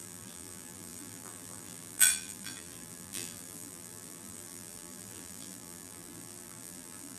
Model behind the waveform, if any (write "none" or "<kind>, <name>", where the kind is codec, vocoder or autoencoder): vocoder, BigVGAN v2